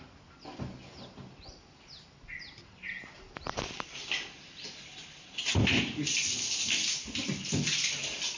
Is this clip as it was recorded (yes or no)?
yes